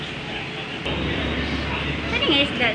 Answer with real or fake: real